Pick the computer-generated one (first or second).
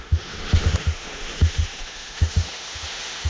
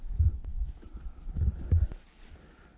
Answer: first